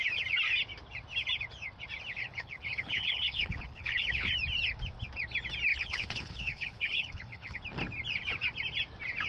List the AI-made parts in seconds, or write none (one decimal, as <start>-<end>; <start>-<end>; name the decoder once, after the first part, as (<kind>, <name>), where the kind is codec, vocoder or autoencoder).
2.2-4.3 (codec, HILCodec); 5.7-7.6